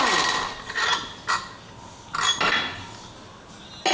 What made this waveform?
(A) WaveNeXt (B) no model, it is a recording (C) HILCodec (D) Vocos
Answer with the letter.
B